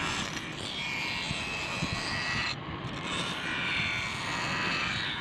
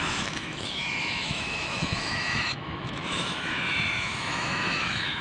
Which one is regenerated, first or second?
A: second